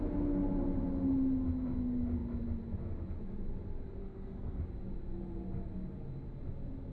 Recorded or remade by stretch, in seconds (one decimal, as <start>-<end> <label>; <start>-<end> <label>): 0.0-4.0 recorded; 4.0-4.6 remade; 4.6-6.9 recorded